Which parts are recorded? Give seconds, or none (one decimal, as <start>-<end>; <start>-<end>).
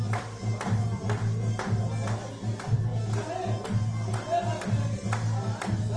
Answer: 0.0-6.0